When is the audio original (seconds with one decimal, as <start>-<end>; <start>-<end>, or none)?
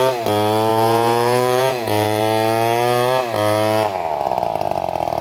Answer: 0.0-0.7; 2.2-5.2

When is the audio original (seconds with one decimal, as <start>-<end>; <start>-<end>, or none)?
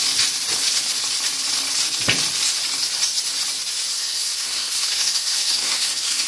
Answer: 0.0-3.9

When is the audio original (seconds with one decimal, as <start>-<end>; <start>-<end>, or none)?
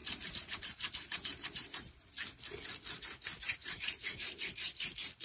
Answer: 2.1-3.6; 4.7-5.2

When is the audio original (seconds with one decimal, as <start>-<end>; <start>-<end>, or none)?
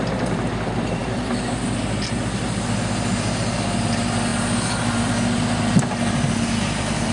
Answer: 0.0-7.1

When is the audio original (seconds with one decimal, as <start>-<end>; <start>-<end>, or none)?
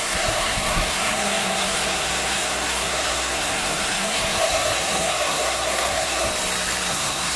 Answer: 6.3-6.9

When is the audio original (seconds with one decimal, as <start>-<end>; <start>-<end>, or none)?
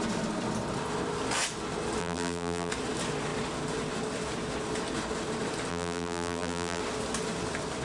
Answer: 0.0-2.0; 2.7-5.7; 6.8-7.8